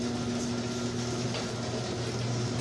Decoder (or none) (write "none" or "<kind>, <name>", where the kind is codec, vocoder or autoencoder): none